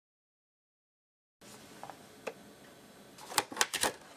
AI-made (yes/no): no